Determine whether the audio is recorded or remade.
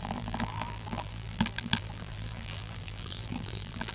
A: remade